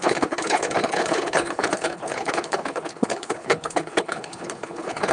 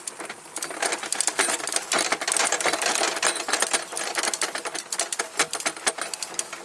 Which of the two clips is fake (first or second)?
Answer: first